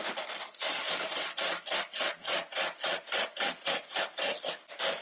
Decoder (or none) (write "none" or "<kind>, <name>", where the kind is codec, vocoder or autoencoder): none